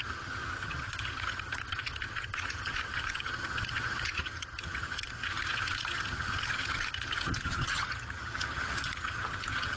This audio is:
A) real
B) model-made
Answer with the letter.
B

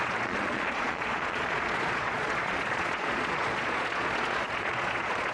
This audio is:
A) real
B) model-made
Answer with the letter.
B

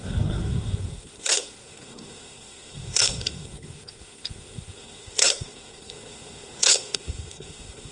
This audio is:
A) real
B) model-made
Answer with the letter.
B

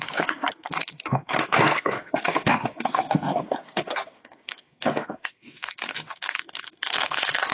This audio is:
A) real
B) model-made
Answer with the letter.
B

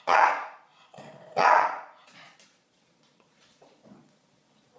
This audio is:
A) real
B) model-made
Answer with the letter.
B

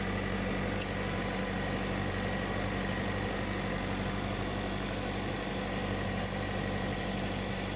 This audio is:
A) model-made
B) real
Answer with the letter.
B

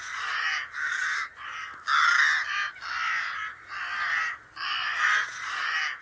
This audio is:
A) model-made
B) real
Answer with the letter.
B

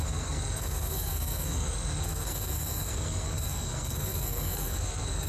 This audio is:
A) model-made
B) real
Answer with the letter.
A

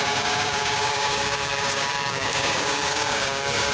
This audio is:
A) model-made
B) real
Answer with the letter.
A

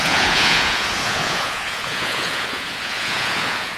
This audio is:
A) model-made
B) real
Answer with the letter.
A